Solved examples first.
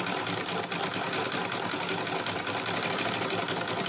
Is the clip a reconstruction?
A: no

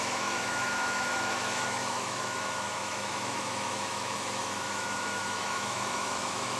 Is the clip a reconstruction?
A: yes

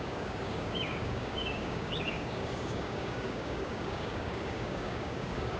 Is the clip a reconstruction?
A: yes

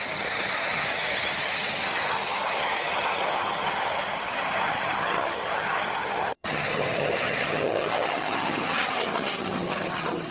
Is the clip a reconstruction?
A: yes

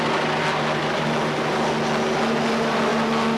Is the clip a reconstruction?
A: no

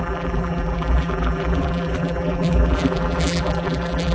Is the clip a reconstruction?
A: yes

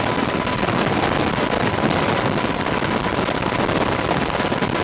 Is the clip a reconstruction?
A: no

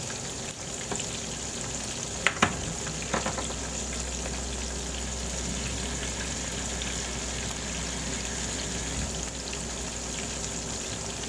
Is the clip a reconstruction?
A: no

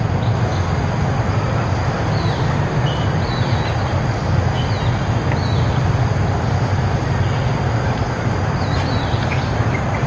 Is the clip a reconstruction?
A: no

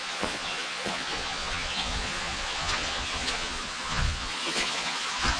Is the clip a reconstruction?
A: yes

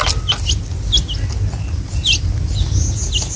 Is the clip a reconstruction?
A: no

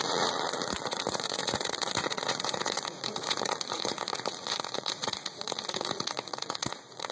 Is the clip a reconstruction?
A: yes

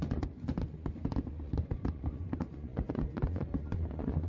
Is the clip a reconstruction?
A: yes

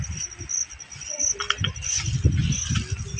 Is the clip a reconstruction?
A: no